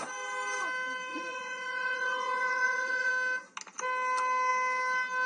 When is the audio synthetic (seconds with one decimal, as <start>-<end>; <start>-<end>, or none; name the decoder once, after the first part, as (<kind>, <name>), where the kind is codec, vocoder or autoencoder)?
1.1-3.1 (vocoder, Vocos)